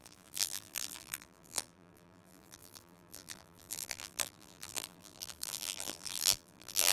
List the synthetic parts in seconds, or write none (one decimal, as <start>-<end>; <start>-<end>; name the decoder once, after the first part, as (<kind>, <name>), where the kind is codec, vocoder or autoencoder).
0.0-6.9 (vocoder, BigVGAN v2)